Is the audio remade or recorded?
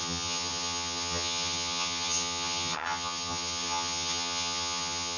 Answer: remade